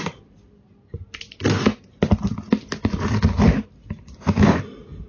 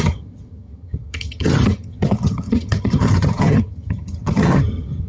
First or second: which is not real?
second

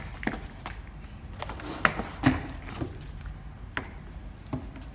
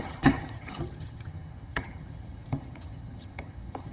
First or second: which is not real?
second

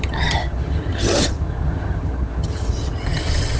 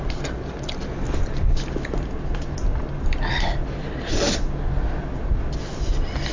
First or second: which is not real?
first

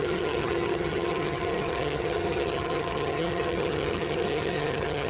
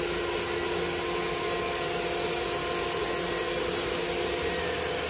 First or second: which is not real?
first